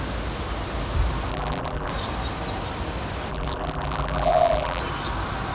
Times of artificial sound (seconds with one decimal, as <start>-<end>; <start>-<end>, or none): 1.3-1.9; 3.3-4.8